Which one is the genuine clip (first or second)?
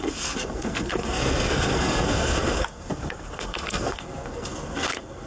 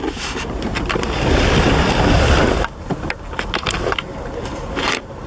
second